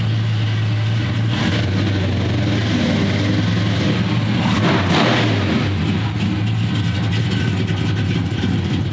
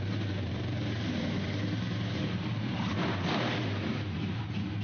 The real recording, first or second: first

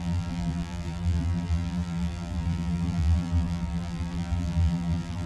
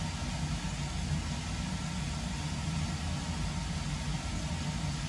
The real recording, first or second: second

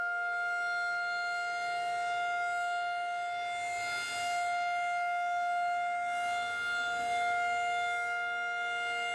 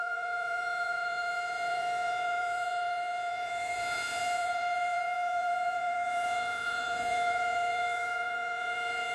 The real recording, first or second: first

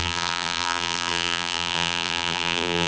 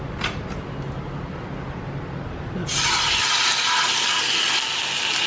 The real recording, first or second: second